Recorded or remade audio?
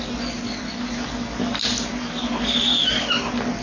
recorded